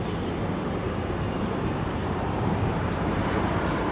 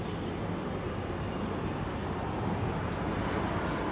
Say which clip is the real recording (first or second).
second